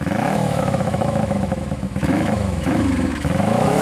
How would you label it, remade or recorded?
remade